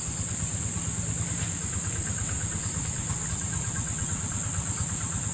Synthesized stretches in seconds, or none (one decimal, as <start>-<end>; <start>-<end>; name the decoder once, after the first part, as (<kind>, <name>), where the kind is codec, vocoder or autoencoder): none